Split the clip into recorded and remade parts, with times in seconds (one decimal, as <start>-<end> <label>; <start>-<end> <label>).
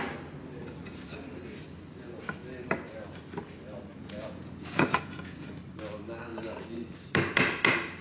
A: 0.0-3.9 recorded; 3.9-5.6 remade; 5.6-8.0 recorded